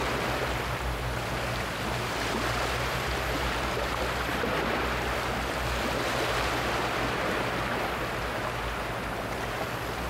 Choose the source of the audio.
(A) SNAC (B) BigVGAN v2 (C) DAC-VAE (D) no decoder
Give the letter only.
B